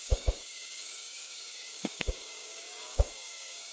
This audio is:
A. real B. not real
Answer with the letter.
B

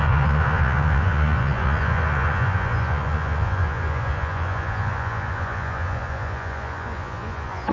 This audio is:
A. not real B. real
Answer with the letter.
A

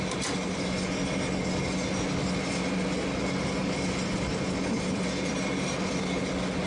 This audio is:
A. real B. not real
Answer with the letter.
A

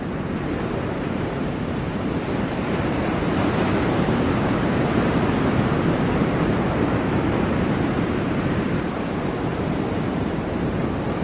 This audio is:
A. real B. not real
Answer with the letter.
B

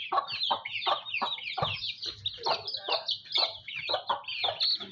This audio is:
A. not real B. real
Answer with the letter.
B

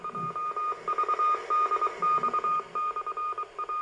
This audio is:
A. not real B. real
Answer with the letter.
B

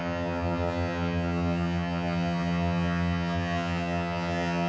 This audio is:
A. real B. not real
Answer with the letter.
B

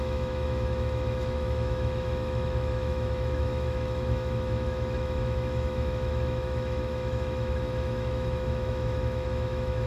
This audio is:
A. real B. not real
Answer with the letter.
B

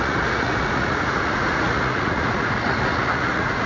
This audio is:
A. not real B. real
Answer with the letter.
A